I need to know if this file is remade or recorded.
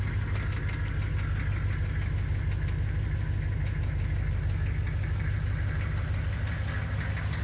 recorded